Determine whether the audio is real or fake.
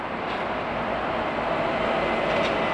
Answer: real